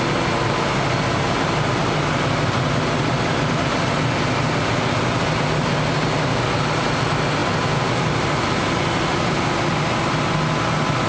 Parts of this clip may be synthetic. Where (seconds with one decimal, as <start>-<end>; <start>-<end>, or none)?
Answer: none